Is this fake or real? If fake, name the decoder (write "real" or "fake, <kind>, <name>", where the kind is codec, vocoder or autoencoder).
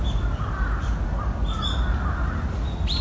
real